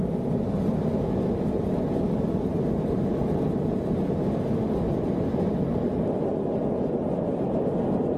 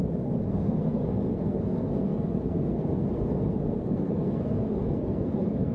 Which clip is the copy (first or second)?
second